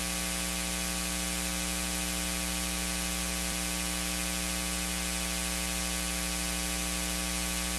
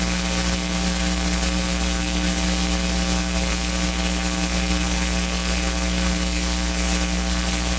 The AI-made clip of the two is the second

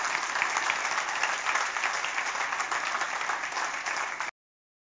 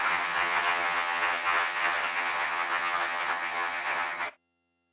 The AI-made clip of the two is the second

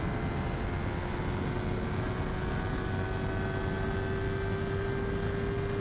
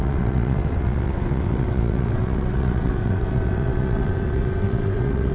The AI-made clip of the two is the second